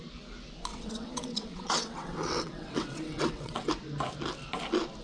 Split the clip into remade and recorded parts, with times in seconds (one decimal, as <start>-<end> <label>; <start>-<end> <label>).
0.0-0.7 recorded; 0.7-3.7 remade; 3.7-5.0 recorded